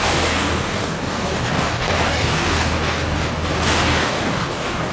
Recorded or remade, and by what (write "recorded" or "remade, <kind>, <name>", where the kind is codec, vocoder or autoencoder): remade, codec, DAC